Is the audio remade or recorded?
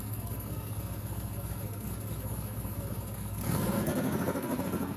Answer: remade